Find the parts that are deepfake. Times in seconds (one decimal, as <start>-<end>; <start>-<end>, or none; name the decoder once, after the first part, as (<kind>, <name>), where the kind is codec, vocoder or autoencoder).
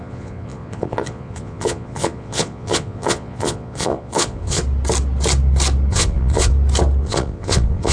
0.0-4.6 (vocoder, Vocos); 5.9-6.5; 7.0-7.9